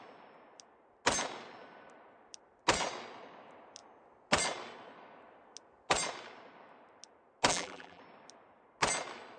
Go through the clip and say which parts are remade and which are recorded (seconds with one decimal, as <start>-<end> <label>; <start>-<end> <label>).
0.0-7.5 recorded; 7.5-8.0 remade; 8.0-9.4 recorded